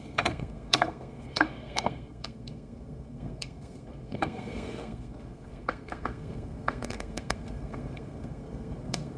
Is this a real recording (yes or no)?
no